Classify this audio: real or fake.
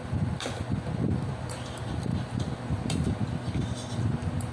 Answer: real